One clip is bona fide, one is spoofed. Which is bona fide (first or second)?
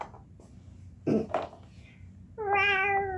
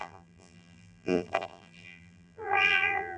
first